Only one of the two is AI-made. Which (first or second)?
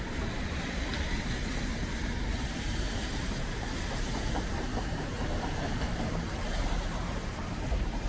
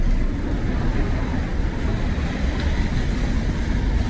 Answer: first